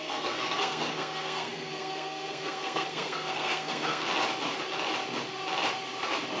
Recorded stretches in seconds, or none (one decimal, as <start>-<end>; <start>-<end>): 4.1-6.4